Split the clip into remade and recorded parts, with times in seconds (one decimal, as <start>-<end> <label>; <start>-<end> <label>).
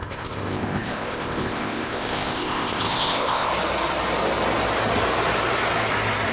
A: 0.0-3.5 remade; 3.5-6.3 recorded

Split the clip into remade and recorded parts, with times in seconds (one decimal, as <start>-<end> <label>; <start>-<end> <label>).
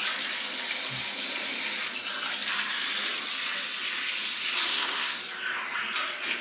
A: 0.0-4.7 recorded; 4.7-5.2 remade; 5.2-6.4 recorded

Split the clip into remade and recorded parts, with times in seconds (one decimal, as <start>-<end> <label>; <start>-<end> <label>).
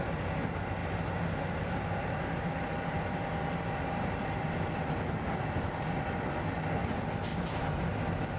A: 0.0-0.8 recorded; 0.8-5.0 remade; 5.0-7.3 recorded; 7.3-8.0 remade; 8.0-8.4 recorded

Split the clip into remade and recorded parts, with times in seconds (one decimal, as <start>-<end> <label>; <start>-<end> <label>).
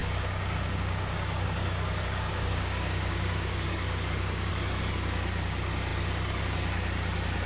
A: 0.0-4.5 remade; 4.5-7.5 recorded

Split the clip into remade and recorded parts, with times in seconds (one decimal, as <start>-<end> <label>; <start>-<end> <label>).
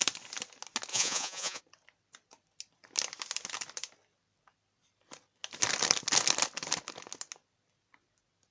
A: 0.0-0.9 recorded; 0.9-1.6 remade; 1.6-8.5 recorded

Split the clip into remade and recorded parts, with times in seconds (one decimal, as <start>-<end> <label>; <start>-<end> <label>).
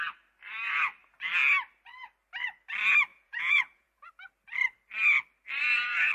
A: 0.0-3.1 recorded; 3.1-4.1 remade; 4.1-6.1 recorded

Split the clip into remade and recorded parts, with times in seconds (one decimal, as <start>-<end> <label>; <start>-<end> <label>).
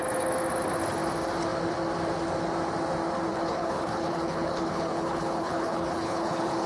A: 0.0-3.3 recorded; 3.3-6.7 remade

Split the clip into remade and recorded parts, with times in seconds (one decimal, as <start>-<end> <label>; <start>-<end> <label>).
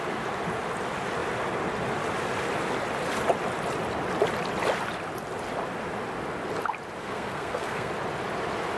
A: 0.0-7.0 recorded; 7.0-7.9 remade; 7.9-8.8 recorded